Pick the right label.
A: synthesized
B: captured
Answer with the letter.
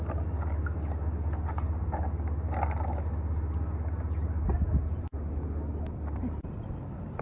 B